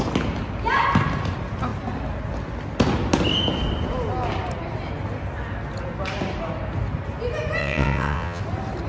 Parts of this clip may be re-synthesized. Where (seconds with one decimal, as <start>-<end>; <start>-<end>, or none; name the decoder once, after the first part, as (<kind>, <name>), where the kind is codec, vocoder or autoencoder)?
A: 7.6-8.4 (vocoder, WaveNeXt)